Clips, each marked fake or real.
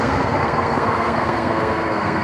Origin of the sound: fake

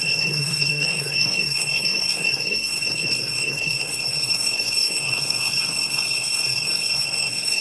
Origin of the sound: fake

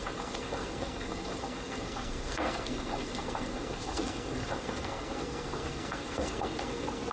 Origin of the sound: fake